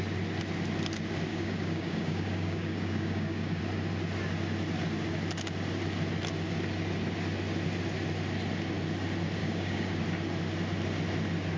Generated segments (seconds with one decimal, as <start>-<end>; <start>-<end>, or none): 1.3-3.6; 9.4-10.0